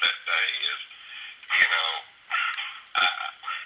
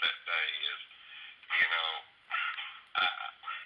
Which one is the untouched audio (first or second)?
second